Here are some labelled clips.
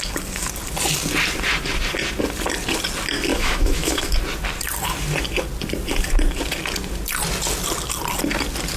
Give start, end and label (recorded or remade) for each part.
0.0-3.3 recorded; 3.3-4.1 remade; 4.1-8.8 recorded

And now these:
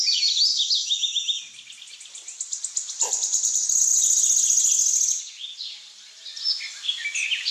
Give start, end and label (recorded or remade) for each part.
0.0-0.5 recorded; 0.5-1.4 remade; 1.4-7.5 recorded

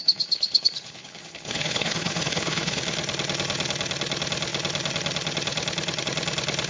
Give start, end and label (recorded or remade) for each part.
0.0-2.8 remade; 2.8-6.7 recorded

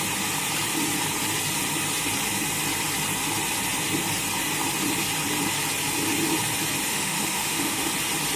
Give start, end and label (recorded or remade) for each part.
0.0-6.9 recorded; 6.9-7.9 remade; 7.9-8.4 recorded

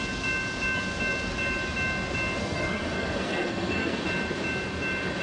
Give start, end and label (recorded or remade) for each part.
0.0-2.4 recorded; 2.4-4.0 remade; 4.0-5.2 recorded